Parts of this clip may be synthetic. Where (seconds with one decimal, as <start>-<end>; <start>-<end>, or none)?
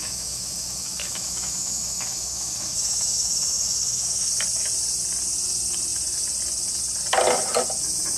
0.0-4.3